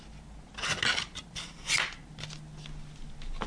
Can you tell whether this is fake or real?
real